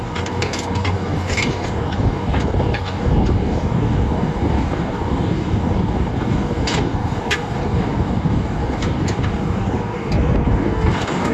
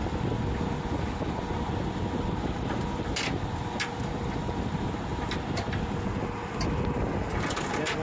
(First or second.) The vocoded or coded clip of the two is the first